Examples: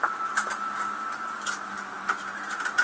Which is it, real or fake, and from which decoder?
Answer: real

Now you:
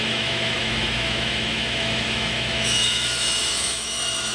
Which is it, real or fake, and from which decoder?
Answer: fake, autoencoder, DAC-VAE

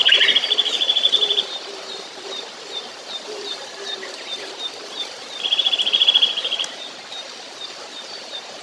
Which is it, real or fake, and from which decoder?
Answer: fake, vocoder, BigVGAN v2